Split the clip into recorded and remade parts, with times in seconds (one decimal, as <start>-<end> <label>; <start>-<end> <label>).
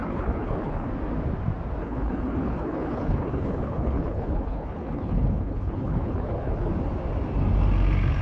0.0-0.9 remade; 0.9-1.8 recorded; 1.8-6.7 remade; 6.7-8.2 recorded